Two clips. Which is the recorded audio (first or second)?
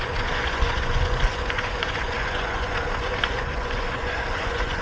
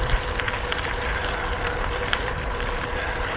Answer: second